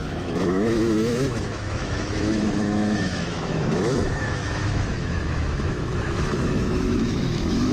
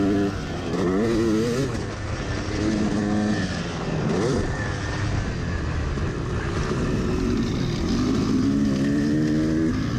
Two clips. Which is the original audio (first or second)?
second